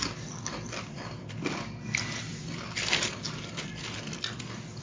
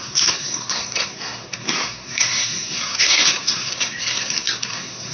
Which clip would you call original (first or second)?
first